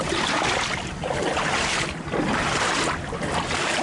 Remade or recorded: recorded